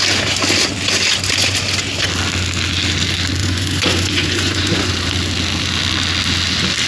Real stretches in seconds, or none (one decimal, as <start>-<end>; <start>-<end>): 0.0-3.4; 4.9-6.9